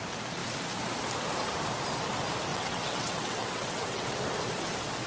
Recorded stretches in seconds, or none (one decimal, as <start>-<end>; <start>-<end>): 0.0-2.5; 4.2-5.1